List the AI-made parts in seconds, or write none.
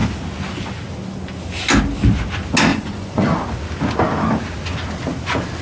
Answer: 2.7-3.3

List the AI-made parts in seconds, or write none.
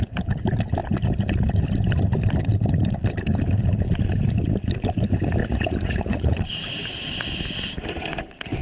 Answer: 5.4-6.4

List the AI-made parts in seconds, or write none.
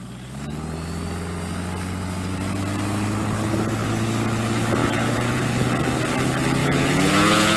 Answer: 4.8-5.4; 6.6-7.6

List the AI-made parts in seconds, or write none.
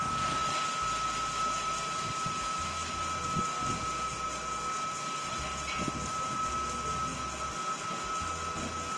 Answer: none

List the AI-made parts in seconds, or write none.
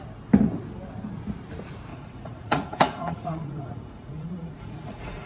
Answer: 1.9-5.3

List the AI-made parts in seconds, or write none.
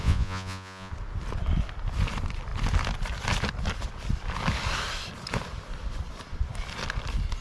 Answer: 0.0-0.9